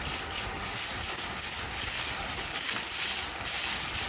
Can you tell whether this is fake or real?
real